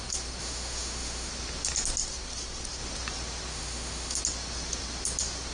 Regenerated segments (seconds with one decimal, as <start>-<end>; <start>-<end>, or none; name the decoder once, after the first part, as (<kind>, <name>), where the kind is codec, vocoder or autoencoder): 0.4-1.3 (autoencoder, DAC-VAE); 3.5-4.2

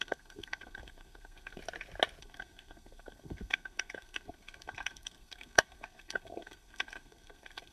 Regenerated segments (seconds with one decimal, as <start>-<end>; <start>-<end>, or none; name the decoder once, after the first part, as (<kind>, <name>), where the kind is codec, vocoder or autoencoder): 0.0-1.6 (codec, SNAC); 2.2-7.7

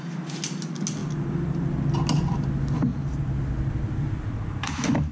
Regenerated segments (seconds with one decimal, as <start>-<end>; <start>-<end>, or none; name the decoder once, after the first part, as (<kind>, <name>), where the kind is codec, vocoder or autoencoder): 2.9-3.4 (vocoder, BigVGAN v2)

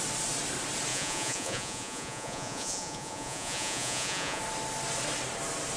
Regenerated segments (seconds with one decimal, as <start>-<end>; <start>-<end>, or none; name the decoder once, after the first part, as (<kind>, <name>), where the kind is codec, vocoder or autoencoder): 0.9-4.4 (vocoder, Vocos)

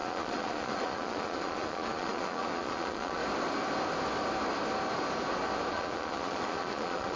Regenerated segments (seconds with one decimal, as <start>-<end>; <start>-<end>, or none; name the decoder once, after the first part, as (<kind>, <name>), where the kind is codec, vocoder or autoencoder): 0.0-3.2 (vocoder, Vocos); 5.7-7.2

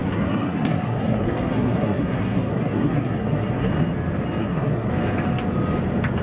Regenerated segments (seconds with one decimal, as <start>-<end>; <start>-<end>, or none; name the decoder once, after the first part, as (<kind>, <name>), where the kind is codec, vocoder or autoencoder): 0.0-3.7 (codec, SNAC); 4.4-4.9

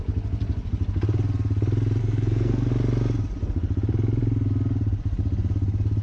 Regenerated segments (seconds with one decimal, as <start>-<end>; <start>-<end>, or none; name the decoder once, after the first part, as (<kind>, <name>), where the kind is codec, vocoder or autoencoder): 2.0-2.7 (codec, SNAC)